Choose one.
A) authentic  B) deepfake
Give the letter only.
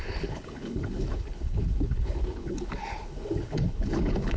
B